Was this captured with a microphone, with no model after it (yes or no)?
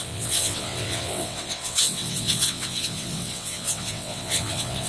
no